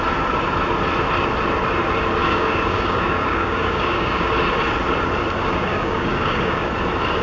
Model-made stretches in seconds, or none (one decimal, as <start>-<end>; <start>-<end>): 2.2-4.3; 5.4-6.7